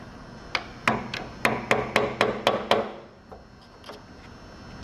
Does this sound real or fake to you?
real